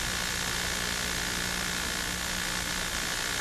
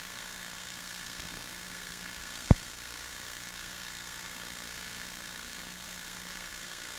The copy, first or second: second